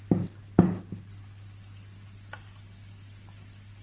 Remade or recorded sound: recorded